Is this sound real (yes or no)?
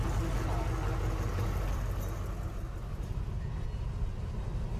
yes